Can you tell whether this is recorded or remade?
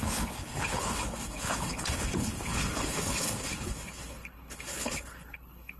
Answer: remade